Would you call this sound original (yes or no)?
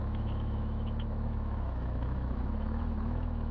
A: no